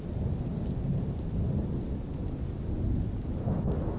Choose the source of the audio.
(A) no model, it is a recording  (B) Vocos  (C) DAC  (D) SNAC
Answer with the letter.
A